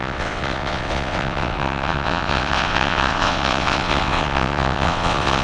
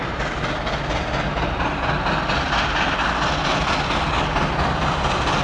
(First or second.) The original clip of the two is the second